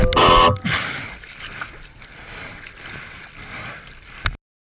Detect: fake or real real